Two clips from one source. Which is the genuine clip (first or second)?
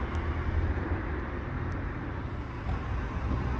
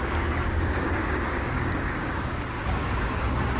first